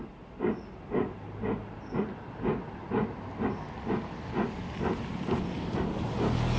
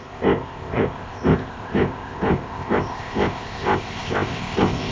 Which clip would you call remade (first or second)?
second